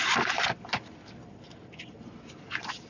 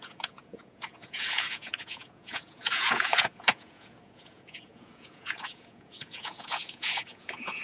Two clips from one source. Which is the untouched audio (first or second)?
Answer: first